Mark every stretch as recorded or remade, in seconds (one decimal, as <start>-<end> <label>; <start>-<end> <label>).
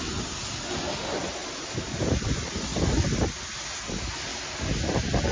0.0-1.4 recorded; 1.4-2.3 remade; 2.3-5.3 recorded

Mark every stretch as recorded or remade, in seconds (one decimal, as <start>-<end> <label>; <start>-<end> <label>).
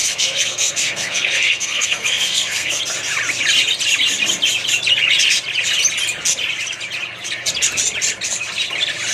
0.0-2.8 remade; 2.8-9.1 recorded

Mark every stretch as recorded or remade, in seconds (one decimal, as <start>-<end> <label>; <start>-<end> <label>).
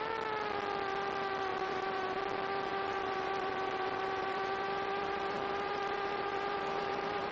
0.0-1.5 recorded; 1.5-2.2 remade; 2.2-2.7 recorded; 2.7-7.3 remade